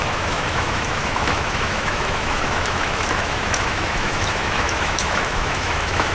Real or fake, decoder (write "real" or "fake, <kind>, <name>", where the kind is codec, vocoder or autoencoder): fake, autoencoder, DAC-VAE